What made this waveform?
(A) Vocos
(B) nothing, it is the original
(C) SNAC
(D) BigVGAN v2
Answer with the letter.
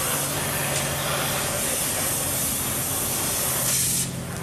B